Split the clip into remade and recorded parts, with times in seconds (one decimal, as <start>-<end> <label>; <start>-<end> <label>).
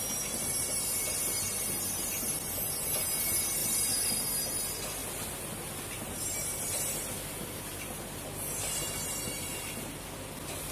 0.0-3.6 recorded; 3.6-4.1 remade; 4.1-10.7 recorded